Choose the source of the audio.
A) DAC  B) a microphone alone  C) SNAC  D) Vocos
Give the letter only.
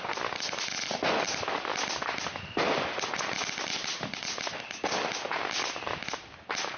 B